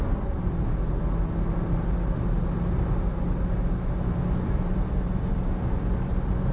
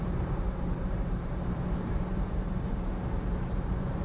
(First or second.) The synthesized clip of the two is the second